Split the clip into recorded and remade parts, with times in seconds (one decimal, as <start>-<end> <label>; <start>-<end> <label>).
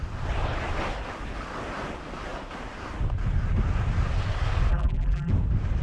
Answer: 0.0-4.7 recorded; 4.7-5.3 remade; 5.3-5.8 recorded